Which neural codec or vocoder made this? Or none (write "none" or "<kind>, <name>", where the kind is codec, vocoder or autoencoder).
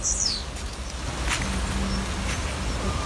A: none